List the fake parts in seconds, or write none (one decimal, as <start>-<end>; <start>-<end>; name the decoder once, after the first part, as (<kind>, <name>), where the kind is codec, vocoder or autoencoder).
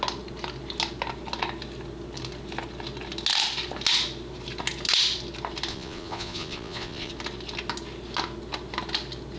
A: 5.7-7.1 (vocoder, Vocos)